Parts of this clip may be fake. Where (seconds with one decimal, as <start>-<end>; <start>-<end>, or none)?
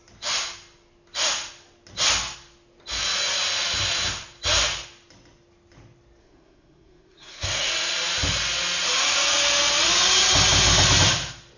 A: 6.2-7.7